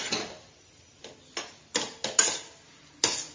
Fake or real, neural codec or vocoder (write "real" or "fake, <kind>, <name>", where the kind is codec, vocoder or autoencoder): real